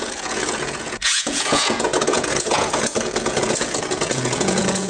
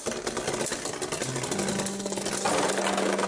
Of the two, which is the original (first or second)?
second